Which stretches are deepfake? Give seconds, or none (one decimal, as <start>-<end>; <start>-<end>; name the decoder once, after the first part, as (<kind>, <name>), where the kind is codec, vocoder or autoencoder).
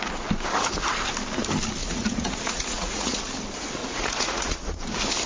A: 1.8-3.2 (vocoder, Vocos); 3.8-4.8